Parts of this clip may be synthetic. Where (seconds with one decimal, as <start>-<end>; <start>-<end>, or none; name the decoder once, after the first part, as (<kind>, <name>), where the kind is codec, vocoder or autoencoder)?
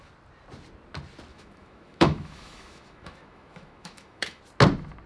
1.3-4.4 (autoencoder, DAC-VAE)